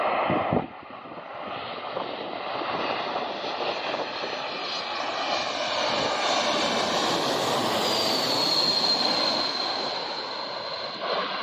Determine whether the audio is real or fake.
real